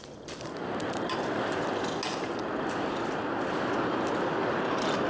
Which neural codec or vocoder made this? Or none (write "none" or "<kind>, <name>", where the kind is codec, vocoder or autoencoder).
none